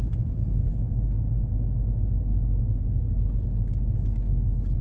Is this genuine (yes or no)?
yes